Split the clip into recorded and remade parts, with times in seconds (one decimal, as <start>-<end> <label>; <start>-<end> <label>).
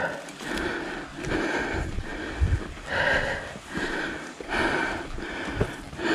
0.0-6.1 recorded